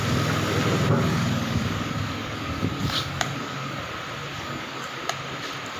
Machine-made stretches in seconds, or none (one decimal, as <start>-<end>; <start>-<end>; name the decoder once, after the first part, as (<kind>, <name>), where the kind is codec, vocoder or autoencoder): 1.1-3.8 (codec, DAC); 4.3-5.0